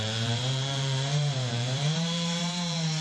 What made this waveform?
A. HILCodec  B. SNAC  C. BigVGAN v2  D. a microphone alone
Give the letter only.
C